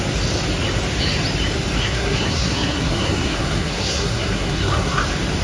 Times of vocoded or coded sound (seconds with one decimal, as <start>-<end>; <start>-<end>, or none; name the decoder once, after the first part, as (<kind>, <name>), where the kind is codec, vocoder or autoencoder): 1.8-5.0 (codec, SNAC)